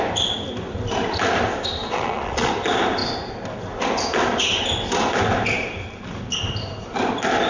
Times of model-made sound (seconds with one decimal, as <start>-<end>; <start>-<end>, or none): 1.8-2.5